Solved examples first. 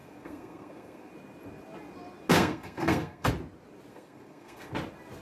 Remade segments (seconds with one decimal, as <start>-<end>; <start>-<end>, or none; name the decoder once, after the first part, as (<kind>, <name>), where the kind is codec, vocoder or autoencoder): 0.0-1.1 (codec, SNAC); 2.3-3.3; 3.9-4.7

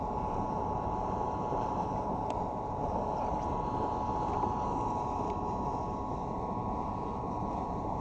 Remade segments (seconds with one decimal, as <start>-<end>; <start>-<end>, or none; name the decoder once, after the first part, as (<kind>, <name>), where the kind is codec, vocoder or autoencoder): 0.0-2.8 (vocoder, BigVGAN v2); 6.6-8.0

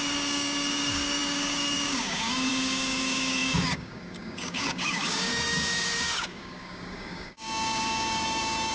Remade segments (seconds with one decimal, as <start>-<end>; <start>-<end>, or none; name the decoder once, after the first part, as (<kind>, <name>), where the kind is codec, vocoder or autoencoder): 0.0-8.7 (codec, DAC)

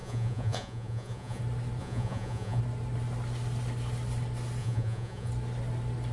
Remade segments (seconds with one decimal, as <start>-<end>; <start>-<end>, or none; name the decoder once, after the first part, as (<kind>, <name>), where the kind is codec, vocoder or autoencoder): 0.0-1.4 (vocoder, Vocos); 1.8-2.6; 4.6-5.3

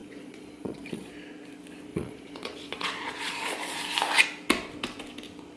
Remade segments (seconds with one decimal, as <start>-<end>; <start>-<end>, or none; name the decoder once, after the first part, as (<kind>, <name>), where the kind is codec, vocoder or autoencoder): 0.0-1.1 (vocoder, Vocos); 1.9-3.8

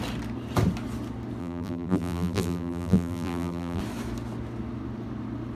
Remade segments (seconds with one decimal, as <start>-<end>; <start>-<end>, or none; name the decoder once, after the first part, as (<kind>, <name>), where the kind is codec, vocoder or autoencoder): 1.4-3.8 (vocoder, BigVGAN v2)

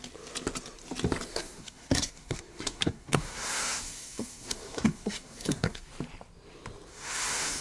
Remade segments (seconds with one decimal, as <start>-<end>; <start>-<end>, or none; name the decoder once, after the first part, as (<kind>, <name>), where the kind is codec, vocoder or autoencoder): 1.3-5.9 (codec, SNAC); 6.9-7.6